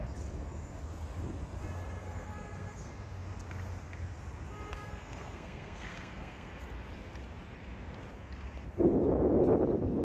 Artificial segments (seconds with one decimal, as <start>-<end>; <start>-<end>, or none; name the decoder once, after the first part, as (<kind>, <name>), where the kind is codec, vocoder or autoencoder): 2.0-2.9 (codec, SNAC); 4.7-6.5